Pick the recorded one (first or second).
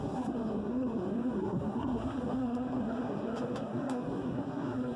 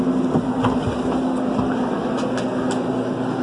second